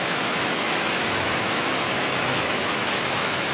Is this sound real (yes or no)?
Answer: no